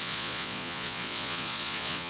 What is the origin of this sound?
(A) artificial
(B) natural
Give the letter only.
A